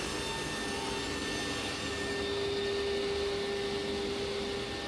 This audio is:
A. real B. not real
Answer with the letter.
A